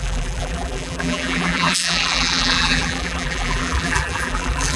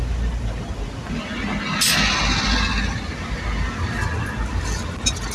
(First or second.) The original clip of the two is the second